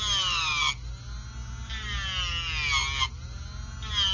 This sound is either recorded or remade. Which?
recorded